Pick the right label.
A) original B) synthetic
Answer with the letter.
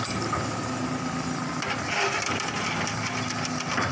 A